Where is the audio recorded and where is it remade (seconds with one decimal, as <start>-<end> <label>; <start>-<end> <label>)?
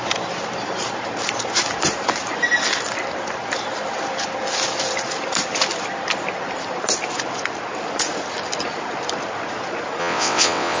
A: 0.0-10.0 recorded; 10.0-10.8 remade